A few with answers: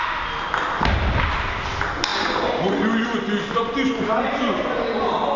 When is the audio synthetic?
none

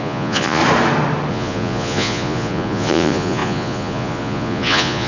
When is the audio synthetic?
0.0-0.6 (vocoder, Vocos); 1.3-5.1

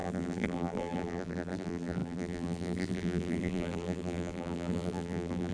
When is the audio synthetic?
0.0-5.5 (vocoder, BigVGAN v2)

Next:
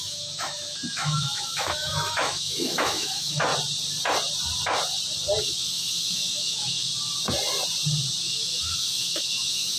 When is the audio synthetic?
0.0-3.5 (autoencoder, DAC-VAE); 5.4-6.9; 8.2-9.8